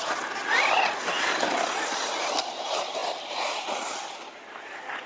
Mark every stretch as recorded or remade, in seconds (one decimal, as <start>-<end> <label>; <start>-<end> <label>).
0.0-5.1 recorded